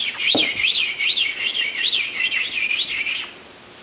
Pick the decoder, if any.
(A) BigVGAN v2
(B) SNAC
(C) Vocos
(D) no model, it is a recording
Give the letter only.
A